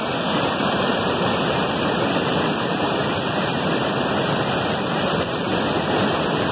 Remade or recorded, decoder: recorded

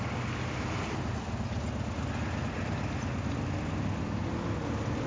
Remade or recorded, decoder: recorded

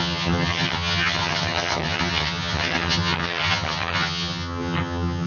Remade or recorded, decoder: remade, vocoder, HiFi-GAN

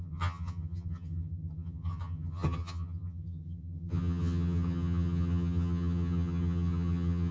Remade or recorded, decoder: remade, vocoder, HiFi-GAN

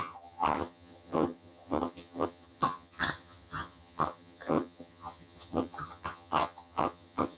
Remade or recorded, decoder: remade, vocoder, HiFi-GAN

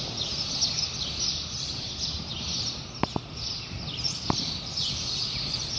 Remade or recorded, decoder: recorded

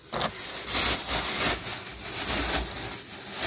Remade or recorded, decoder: recorded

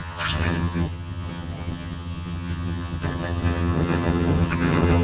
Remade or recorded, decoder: remade, vocoder, HiFi-GAN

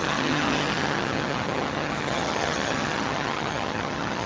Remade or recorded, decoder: remade, vocoder, HiFi-GAN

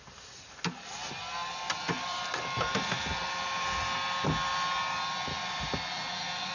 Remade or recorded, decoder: recorded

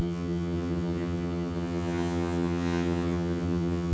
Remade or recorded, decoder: remade, vocoder, HiFi-GAN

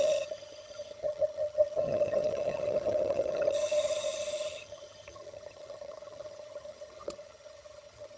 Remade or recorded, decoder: remade, vocoder, HiFi-GAN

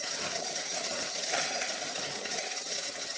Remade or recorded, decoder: remade, vocoder, HiFi-GAN